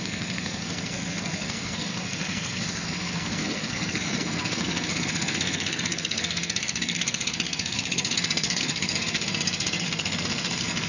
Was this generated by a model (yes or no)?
yes